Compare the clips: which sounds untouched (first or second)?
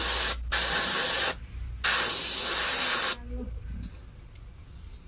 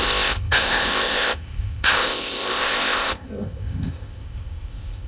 first